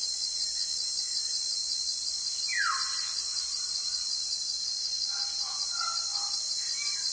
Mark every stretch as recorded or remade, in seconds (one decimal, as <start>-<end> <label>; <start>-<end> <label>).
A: 0.0-7.1 recorded